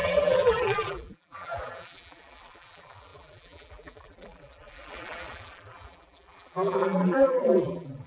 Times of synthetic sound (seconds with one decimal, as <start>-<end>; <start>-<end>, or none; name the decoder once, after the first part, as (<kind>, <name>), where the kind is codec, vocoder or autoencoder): 0.0-8.1 (vocoder, BigVGAN v2)